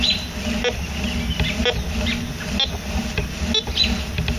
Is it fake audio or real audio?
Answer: real